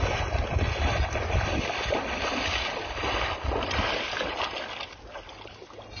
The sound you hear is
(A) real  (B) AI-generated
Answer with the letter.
A